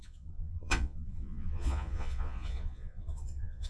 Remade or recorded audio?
remade